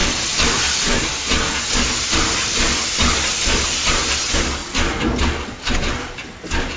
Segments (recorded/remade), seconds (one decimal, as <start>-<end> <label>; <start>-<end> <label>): 0.0-6.8 recorded